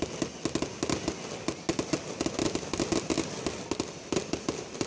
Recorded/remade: recorded